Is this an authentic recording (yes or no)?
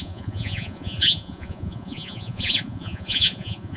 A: no